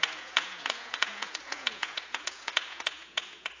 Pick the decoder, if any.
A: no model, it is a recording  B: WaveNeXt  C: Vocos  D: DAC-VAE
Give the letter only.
C